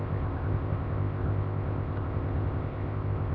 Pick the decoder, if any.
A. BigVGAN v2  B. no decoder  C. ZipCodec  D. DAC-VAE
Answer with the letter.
C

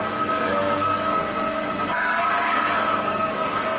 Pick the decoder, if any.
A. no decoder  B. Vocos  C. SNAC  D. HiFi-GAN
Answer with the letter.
C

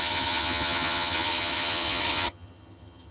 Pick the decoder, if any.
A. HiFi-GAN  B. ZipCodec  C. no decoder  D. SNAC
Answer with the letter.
A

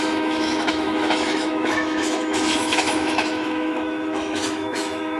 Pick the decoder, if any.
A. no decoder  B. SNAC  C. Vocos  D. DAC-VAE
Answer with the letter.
D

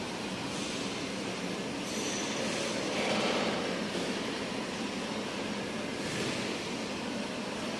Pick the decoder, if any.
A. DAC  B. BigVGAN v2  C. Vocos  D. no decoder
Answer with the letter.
B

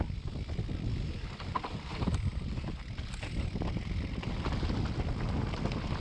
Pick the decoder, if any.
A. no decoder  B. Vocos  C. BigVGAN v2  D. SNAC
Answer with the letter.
A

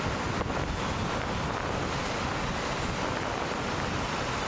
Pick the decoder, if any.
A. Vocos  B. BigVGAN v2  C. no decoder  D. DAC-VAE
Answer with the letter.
C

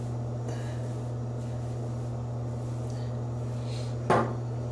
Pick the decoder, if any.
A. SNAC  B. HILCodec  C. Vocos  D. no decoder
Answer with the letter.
D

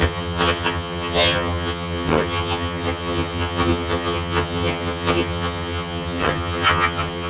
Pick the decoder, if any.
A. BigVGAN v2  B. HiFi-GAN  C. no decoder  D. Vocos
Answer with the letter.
B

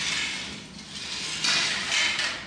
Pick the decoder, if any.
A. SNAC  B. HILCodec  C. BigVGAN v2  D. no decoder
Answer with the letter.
D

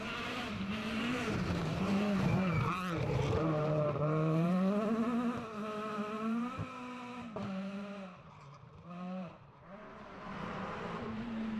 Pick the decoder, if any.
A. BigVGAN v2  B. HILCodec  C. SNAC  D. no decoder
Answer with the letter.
A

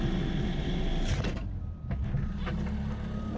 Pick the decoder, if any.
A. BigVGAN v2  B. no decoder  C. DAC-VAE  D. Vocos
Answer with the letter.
B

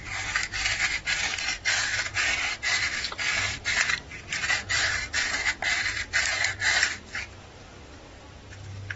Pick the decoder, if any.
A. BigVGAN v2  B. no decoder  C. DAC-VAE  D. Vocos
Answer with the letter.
B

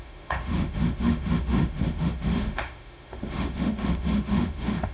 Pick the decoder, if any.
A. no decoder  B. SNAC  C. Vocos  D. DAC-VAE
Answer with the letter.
D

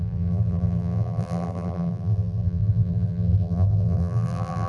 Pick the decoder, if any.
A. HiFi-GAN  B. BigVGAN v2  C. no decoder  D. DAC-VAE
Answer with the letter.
B